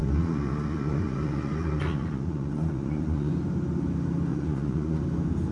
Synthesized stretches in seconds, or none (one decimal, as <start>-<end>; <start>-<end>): 0.0-3.3; 4.3-5.0